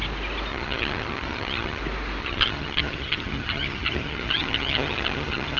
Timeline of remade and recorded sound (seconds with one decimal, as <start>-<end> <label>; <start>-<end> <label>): 0.0-0.5 recorded; 0.5-1.8 remade; 1.8-2.2 recorded; 2.2-5.6 remade